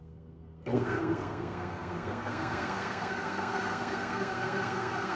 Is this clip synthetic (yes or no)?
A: yes